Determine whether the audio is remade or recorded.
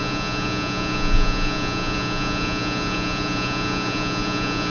remade